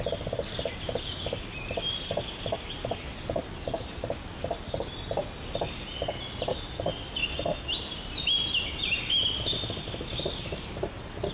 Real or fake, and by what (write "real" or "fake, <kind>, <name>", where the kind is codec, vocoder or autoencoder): real